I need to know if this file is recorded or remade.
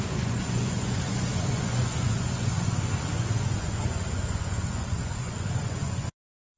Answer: remade